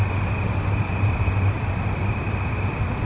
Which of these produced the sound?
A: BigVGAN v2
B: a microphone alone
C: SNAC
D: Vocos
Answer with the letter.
B